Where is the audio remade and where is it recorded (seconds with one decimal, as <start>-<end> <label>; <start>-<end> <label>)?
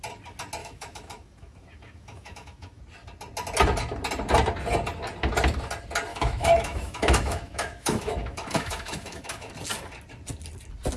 0.0-0.6 recorded; 0.6-2.8 remade; 2.8-6.1 recorded; 6.1-9.5 remade; 9.5-11.0 recorded